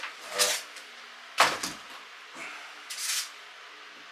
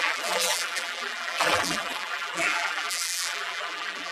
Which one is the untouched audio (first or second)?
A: first